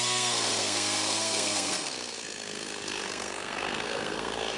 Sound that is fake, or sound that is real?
fake